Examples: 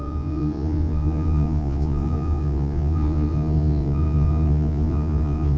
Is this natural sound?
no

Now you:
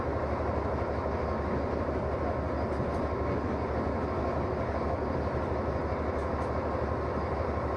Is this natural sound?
yes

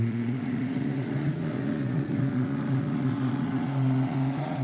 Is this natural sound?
no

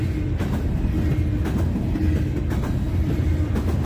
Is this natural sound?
yes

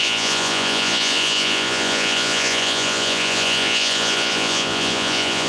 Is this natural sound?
no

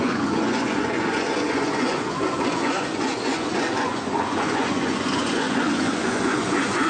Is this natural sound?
no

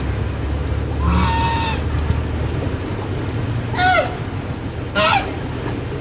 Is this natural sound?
yes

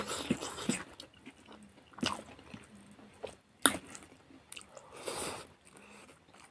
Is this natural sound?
yes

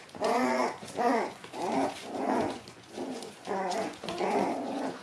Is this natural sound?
no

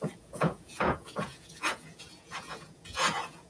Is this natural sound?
no